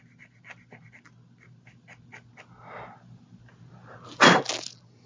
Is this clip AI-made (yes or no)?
no